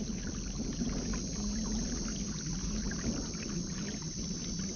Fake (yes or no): no